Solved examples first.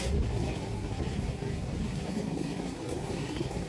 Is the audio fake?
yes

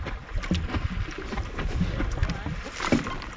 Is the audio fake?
no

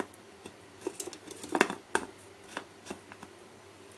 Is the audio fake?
no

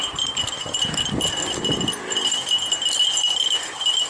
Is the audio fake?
yes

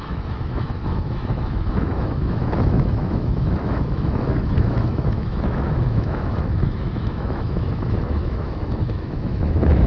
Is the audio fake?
yes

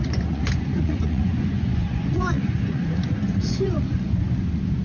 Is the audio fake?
yes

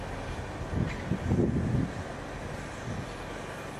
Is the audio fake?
no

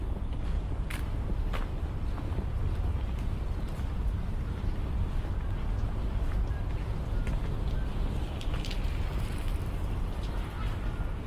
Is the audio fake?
no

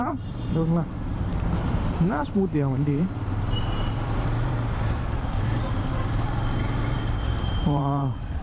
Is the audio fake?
yes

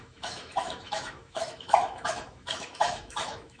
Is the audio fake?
yes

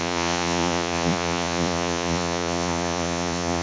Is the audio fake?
yes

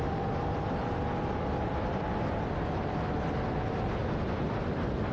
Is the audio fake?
yes